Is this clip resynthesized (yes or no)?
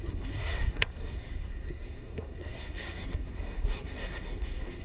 yes